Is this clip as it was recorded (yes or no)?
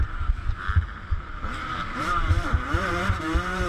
no